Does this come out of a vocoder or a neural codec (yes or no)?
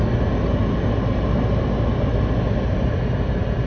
no